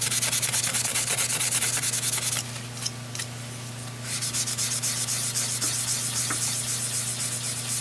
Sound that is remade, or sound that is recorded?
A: recorded